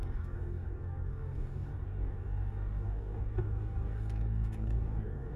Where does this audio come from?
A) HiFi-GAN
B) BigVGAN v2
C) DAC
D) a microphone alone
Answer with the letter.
C